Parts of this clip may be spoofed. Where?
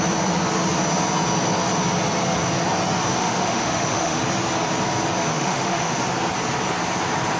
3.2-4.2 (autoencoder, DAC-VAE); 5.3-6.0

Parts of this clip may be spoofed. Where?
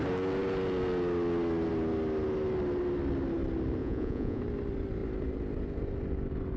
3.8-4.4 (vocoder, Vocos)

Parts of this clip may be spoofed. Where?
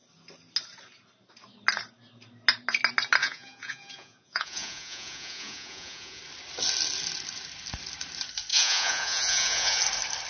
3.2-6.2 (vocoder, Vocos); 8.5-9.8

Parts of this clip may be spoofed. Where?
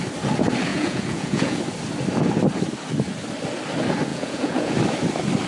0.7-1.6 (vocoder, Vocos); 4.1-4.7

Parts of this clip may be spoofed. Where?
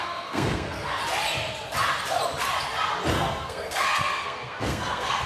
0.0-1.0 (codec, SNAC); 3.1-5.3